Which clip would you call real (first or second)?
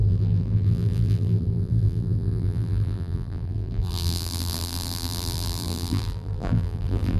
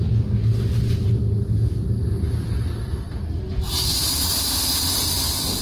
second